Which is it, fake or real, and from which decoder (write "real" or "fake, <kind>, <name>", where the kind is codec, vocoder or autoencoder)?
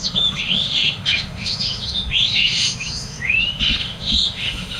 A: fake, autoencoder, DAC-VAE